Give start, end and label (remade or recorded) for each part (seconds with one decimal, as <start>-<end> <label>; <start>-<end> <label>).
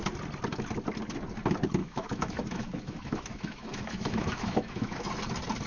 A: 0.0-1.8 recorded; 1.8-5.1 remade; 5.1-5.7 recorded